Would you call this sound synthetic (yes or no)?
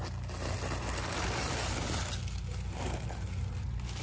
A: no